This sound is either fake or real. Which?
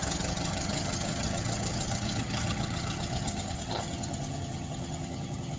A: fake